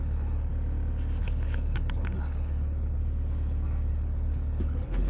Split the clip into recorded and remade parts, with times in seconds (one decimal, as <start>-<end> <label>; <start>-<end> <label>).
0.0-0.5 remade; 0.5-1.2 recorded; 1.2-3.0 remade; 3.0-3.9 recorded; 3.9-5.1 remade